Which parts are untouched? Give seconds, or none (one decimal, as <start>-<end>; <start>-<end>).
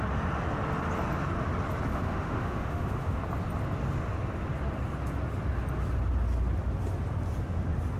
0.0-1.9; 3.2-8.0